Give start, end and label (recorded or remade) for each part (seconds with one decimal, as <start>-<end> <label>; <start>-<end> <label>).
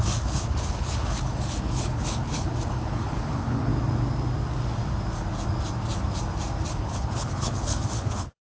0.0-3.7 remade; 3.7-6.7 recorded; 6.7-8.5 remade